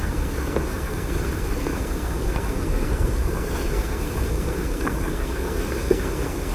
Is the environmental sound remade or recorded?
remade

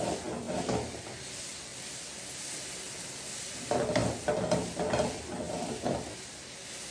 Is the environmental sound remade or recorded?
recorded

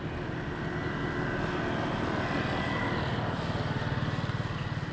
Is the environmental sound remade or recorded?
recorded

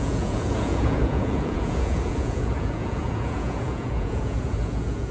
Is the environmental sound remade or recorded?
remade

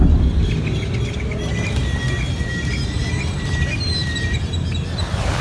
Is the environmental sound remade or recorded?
recorded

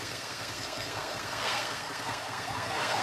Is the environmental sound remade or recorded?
remade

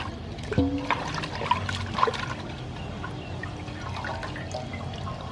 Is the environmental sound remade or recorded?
recorded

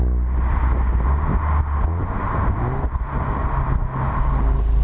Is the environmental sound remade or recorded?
recorded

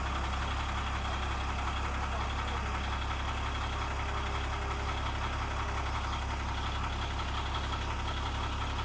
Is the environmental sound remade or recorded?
recorded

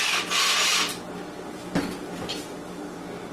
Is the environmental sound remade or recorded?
recorded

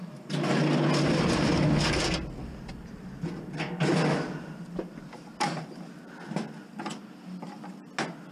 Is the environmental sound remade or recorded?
recorded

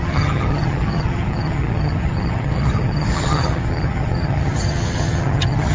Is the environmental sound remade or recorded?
remade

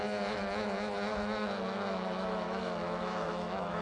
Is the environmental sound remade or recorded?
remade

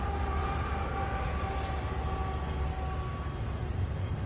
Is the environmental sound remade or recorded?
recorded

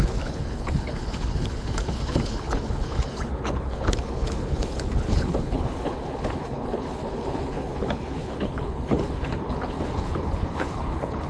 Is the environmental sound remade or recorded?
remade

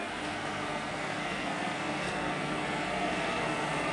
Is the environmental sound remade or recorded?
remade